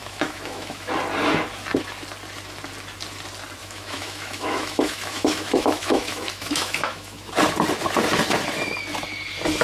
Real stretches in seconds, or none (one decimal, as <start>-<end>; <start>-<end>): 0.9-3.6; 7.3-9.6